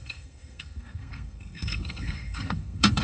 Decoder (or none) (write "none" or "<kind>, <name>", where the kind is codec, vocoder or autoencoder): codec, SNAC